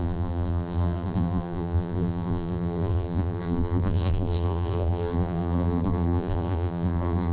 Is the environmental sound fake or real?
fake